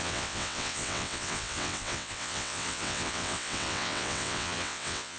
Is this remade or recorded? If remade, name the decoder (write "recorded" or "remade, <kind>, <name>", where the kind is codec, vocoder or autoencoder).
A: remade, vocoder, WaveNeXt